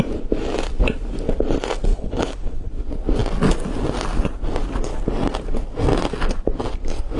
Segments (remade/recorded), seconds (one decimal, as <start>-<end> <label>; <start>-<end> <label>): 0.0-1.9 recorded; 1.9-2.7 remade; 2.7-7.2 recorded